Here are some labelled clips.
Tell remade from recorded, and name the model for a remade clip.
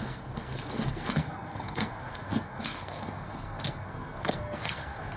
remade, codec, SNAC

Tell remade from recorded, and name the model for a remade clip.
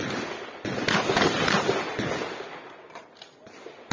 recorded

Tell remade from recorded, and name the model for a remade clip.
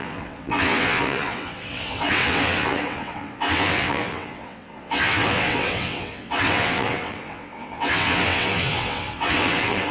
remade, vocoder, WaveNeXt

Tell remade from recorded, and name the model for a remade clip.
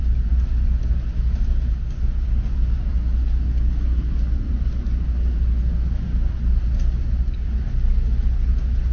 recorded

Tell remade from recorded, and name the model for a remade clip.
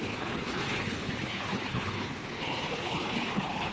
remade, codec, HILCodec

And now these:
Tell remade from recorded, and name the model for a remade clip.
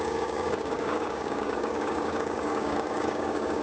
remade, codec, DAC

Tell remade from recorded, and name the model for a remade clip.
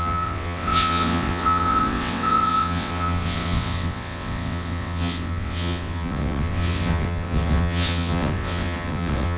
remade, vocoder, WaveNeXt